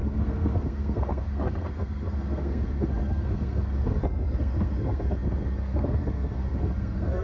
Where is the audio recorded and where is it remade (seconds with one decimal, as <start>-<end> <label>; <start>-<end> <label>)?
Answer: 0.0-7.2 remade